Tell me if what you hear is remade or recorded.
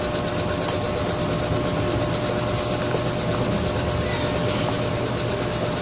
recorded